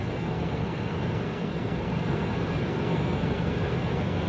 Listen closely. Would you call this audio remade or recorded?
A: remade